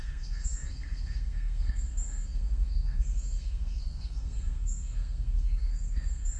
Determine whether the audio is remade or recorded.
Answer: remade